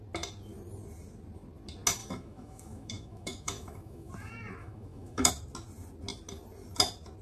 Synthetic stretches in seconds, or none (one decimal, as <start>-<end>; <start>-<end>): 2.0-4.1; 4.6-5.3